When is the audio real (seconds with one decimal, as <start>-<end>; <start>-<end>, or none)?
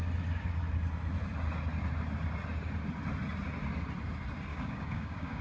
0.0-4.5